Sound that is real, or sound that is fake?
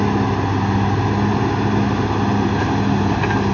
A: real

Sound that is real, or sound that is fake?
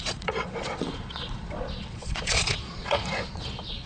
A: fake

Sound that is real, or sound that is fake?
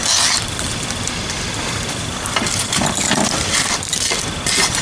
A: real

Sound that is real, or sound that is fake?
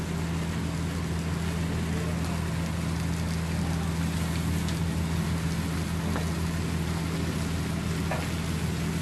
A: real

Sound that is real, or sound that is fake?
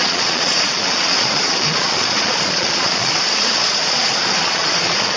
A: fake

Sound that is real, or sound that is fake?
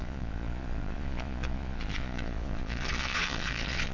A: fake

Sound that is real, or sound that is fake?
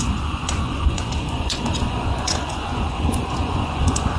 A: fake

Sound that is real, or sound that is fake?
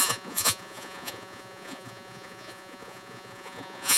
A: fake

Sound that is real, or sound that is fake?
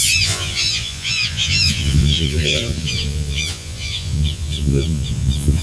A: fake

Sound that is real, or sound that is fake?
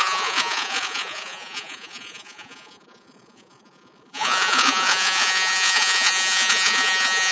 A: fake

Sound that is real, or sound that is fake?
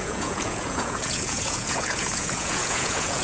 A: fake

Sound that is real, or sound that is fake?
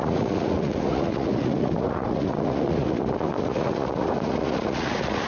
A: fake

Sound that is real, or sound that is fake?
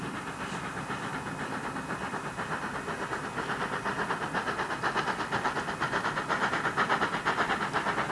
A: real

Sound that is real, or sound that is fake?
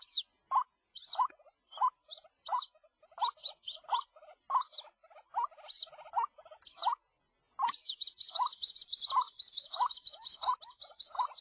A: real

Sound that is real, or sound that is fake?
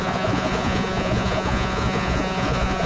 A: fake